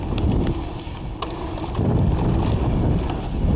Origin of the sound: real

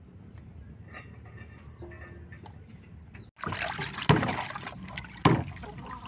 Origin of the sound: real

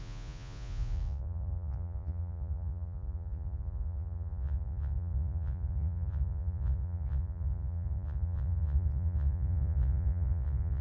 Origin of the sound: fake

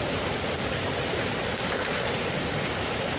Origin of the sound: real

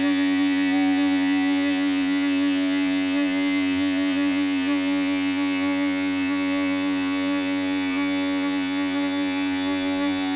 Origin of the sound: fake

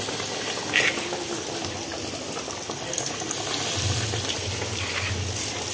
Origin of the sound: real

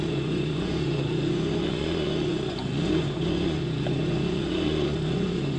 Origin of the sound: fake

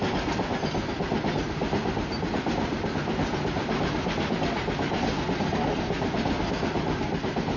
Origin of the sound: real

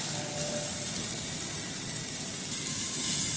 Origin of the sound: real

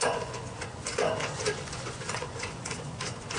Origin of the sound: fake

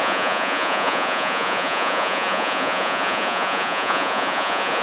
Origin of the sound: fake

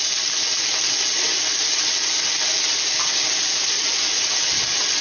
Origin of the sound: real